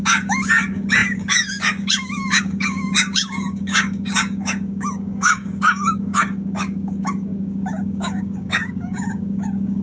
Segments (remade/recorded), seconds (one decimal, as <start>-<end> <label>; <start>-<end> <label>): 0.0-9.8 remade